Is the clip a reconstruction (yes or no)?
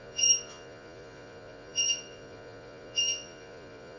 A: yes